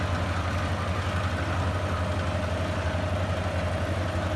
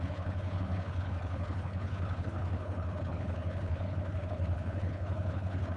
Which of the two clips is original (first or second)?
first